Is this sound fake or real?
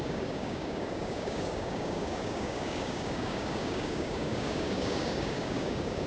fake